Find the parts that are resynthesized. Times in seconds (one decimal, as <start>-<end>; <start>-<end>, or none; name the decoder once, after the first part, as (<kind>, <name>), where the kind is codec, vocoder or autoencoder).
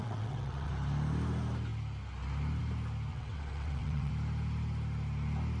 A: 0.0-0.7 (vocoder, WaveNeXt); 3.1-4.1